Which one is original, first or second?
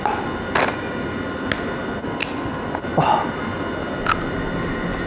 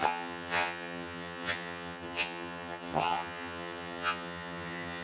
first